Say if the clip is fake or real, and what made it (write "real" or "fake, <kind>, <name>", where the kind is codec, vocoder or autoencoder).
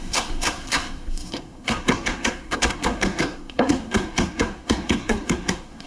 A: fake, codec, SNAC